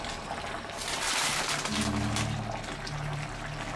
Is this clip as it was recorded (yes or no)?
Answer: yes